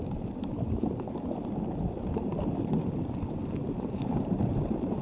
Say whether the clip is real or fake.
real